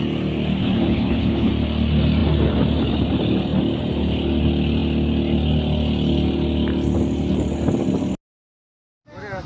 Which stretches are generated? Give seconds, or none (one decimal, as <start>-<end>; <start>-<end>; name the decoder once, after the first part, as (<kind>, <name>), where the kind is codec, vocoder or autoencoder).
0.6-1.5 (codec, HILCodec)